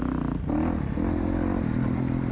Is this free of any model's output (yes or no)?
yes